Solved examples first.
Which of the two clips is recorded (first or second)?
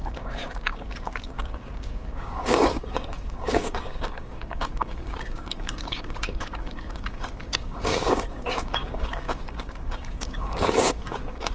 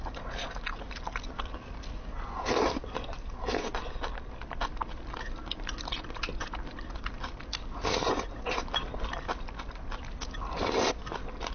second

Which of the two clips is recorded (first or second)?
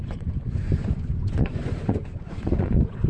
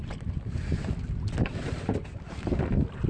second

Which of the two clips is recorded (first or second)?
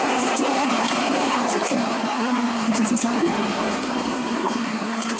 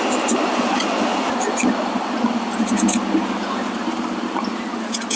second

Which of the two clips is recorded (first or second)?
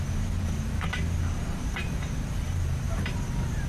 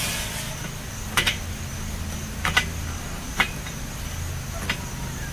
second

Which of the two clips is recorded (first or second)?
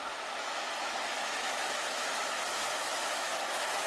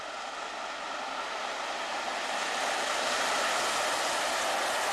second